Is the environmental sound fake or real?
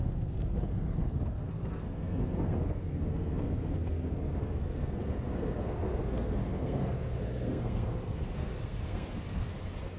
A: fake